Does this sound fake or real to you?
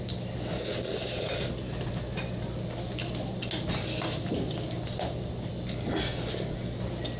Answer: real